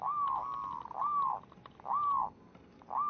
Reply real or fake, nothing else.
real